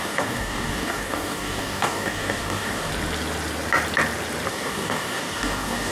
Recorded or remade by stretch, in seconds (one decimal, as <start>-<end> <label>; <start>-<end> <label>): 0.0-2.9 remade; 2.9-4.5 recorded; 4.5-5.9 remade